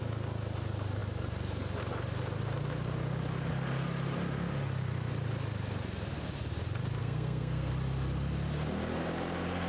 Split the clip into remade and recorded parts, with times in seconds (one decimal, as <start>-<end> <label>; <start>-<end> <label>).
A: 0.0-7.0 recorded; 7.0-7.7 remade; 7.7-9.7 recorded